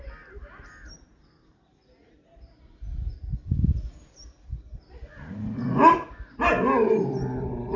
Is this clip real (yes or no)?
yes